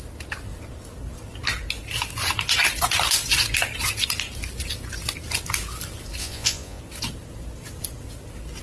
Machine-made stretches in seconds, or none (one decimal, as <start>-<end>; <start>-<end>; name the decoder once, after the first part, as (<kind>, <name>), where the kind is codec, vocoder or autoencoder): 6.2-6.8 (vocoder, Vocos)